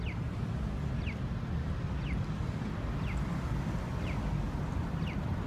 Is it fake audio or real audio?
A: real